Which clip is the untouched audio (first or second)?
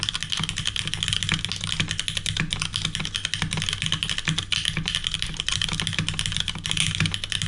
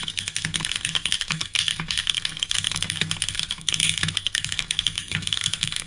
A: first